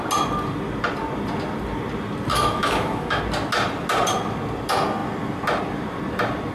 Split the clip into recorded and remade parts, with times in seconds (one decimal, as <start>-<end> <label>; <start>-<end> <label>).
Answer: 0.0-2.3 recorded; 2.3-3.2 remade; 3.2-6.5 recorded